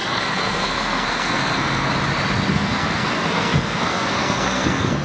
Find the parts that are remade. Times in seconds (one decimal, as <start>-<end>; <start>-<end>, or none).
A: 0.0-1.9; 2.5-5.0